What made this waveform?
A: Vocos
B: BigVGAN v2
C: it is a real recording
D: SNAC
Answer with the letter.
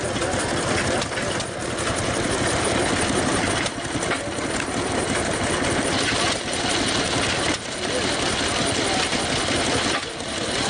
C